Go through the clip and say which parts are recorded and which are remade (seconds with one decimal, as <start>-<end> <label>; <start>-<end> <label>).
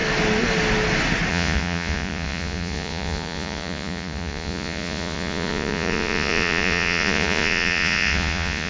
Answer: 0.0-1.3 recorded; 1.3-8.7 remade